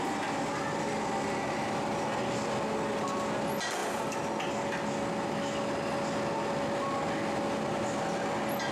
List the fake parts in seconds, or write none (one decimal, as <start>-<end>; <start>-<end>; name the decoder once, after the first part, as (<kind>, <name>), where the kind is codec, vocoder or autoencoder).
none